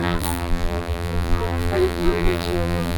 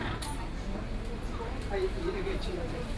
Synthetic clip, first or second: first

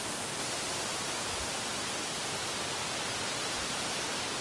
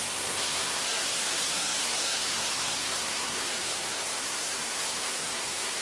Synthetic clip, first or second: second